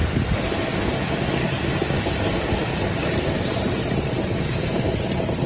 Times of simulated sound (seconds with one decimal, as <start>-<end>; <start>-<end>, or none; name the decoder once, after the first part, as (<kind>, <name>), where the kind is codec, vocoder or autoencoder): 3.3-5.5 (vocoder, BigVGAN v2)